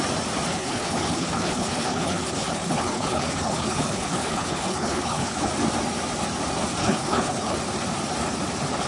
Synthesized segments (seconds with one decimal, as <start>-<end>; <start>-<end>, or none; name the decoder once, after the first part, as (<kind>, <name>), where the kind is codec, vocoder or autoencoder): 0.5-5.5 (codec, HILCodec); 6.8-7.6